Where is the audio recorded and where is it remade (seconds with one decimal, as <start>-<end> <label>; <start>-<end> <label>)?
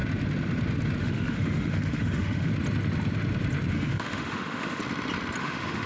0.0-1.0 recorded; 1.0-2.5 remade; 2.5-3.7 recorded; 3.7-4.8 remade; 4.8-5.4 recorded; 5.4-5.9 remade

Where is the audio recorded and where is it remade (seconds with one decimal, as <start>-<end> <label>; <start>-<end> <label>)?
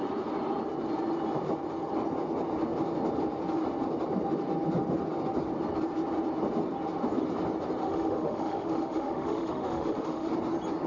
0.0-7.8 recorded; 7.8-10.3 remade; 10.3-10.9 recorded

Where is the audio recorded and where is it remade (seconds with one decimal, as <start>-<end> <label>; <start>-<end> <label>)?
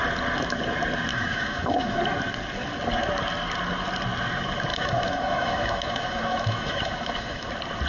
0.0-1.1 recorded; 1.1-2.0 remade; 2.0-4.7 recorded; 4.7-7.5 remade; 7.5-7.9 recorded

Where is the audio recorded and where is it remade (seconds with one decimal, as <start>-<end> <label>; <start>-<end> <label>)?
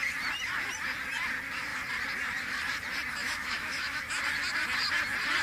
0.0-3.2 recorded; 3.2-4.0 remade; 4.0-5.4 recorded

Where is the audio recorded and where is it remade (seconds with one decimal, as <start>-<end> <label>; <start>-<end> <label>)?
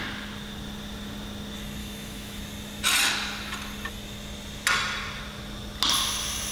0.0-1.8 recorded; 1.8-2.4 remade; 2.4-6.5 recorded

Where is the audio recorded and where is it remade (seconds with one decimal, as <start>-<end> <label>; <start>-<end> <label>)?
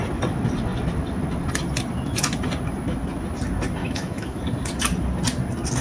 0.0-3.8 recorded; 3.8-4.4 remade; 4.4-5.8 recorded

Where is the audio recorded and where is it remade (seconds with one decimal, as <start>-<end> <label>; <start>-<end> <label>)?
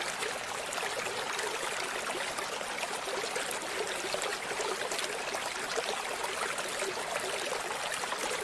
0.0-8.4 recorded